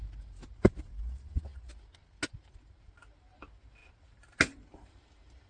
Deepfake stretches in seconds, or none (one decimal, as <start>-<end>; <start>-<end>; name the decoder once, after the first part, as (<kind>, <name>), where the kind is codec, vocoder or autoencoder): none